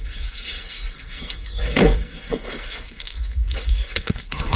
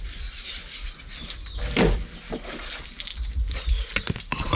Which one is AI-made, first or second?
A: first